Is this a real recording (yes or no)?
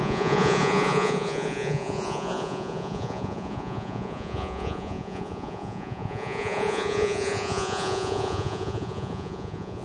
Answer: no